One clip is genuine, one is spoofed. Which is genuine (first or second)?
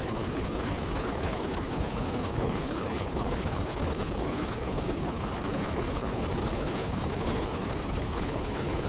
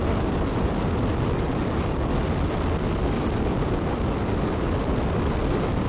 second